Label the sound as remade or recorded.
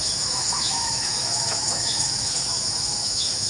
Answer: remade